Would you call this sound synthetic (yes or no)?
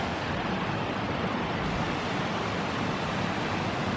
no